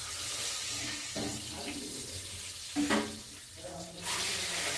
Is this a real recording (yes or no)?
yes